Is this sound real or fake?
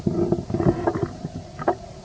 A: real